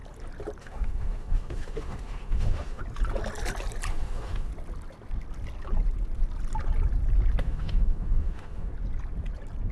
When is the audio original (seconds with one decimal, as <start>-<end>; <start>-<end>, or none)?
0.0-0.6; 2.8-3.9; 4.5-7.4; 8.7-9.7